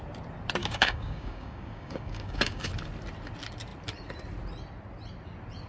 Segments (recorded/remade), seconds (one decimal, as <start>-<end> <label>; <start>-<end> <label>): 0.0-0.6 recorded; 0.6-2.7 remade; 2.7-5.7 recorded